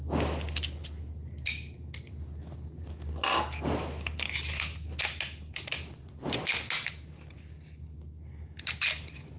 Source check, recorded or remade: recorded